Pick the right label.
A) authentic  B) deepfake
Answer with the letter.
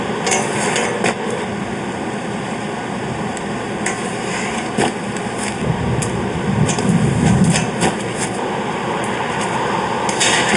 A